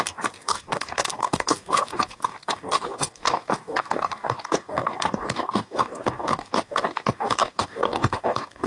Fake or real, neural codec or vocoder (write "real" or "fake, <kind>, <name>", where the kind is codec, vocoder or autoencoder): fake, codec, DAC